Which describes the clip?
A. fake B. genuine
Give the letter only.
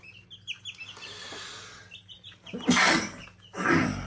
B